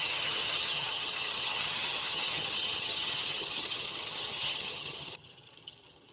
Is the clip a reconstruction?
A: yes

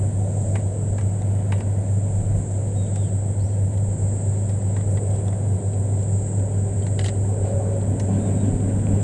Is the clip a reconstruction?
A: no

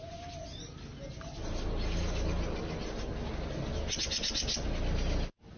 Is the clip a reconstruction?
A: no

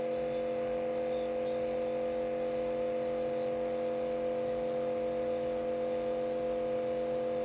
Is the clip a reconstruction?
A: no